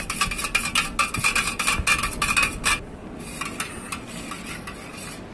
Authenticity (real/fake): real